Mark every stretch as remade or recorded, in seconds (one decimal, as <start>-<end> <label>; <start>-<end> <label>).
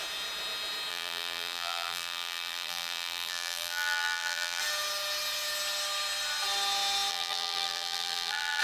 0.0-0.9 recorded; 0.9-4.6 remade; 4.6-7.1 recorded; 7.1-8.6 remade